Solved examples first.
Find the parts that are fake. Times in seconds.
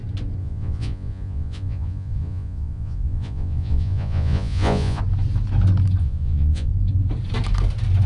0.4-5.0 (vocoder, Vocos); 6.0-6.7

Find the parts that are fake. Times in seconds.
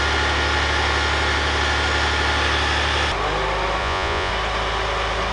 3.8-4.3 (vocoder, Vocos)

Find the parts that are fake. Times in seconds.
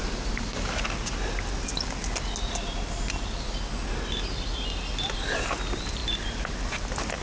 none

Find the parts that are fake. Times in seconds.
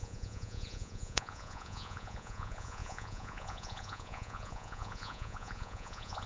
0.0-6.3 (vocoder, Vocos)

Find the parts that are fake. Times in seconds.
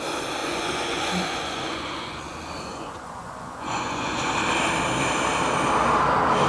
0.4-4.3 (vocoder, Vocos)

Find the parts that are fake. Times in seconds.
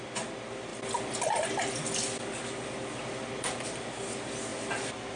none